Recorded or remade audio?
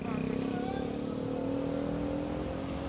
recorded